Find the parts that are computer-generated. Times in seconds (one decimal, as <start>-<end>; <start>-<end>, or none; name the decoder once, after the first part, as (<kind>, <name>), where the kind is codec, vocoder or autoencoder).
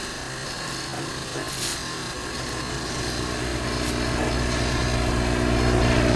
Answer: none